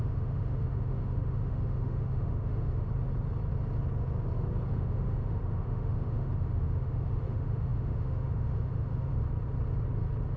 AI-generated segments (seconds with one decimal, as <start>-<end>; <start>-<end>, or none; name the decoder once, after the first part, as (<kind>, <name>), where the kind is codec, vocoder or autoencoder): 0.0-2.9 (autoencoder, DAC-VAE); 4.7-9.1

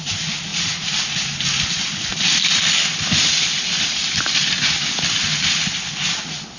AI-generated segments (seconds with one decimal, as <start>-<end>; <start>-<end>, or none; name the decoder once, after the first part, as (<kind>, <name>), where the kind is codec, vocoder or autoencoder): none

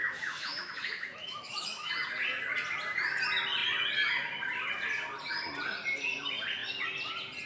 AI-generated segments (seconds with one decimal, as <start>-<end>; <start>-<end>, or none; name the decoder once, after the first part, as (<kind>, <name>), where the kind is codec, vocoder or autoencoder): 0.0-1.9 (autoencoder, DAC-VAE)

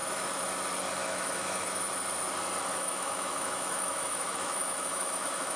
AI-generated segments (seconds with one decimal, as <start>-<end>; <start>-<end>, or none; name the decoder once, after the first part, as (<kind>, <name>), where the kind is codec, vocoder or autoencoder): 0.0-0.5 (autoencoder, DAC-VAE); 1.0-1.8; 2.7-5.6

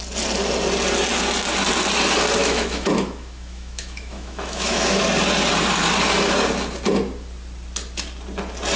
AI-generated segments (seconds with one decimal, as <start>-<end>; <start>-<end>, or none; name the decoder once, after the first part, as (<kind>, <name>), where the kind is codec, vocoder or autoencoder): 2.4-5.0 (autoencoder, DAC-VAE)